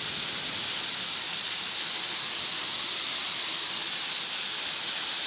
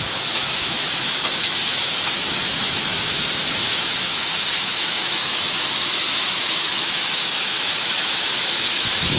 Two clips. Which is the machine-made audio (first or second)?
second